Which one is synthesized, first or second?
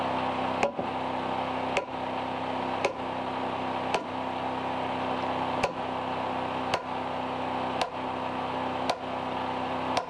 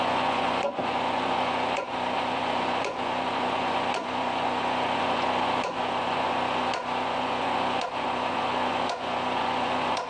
second